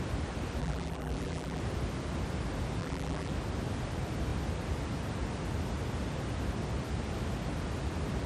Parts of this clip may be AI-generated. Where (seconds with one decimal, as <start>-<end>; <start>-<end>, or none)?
0.6-1.6; 2.8-3.3